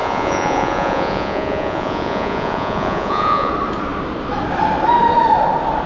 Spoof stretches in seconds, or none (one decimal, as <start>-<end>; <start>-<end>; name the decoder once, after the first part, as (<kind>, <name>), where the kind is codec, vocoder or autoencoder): 0.0-3.5 (vocoder, Vocos)